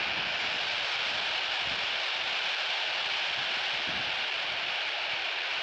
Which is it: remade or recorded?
remade